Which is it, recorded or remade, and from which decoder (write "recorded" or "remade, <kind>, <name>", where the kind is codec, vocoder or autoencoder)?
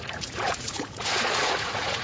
remade, vocoder, Vocos